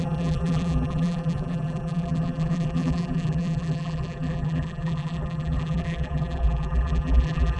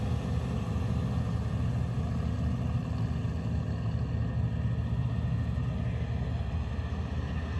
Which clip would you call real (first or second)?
second